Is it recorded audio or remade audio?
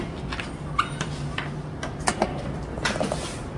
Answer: recorded